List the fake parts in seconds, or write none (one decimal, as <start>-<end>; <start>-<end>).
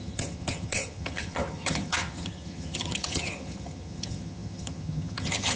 0.0-5.6